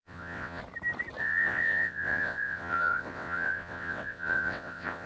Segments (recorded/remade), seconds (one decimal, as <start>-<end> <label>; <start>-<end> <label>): 0.0-0.6 remade; 0.6-1.2 recorded; 1.2-5.1 remade